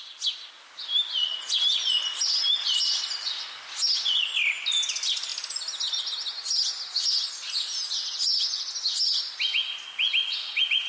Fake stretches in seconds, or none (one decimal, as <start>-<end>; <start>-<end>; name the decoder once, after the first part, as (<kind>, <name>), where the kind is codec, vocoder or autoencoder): none